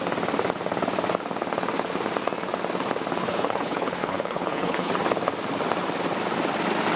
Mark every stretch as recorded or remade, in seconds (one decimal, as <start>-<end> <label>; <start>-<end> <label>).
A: 0.0-3.2 recorded; 3.2-4.9 remade; 4.9-7.0 recorded